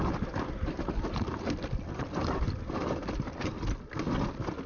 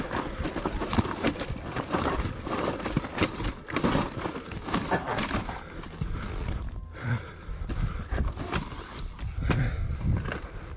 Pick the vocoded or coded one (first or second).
second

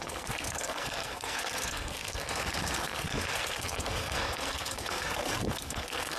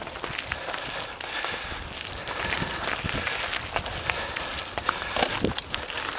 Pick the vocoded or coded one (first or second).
first